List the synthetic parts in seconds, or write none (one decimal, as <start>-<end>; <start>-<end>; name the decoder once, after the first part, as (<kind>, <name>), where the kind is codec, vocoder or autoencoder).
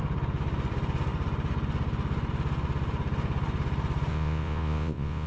4.1-5.3 (vocoder, Vocos)